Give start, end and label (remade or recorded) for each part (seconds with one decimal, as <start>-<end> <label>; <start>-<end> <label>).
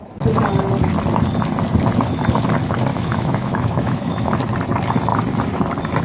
0.0-2.9 recorded; 2.9-4.4 remade; 4.4-6.0 recorded